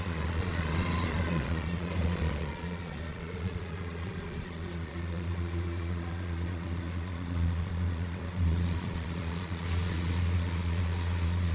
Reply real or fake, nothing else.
fake